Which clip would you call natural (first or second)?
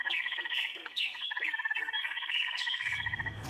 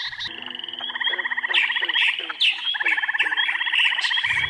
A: second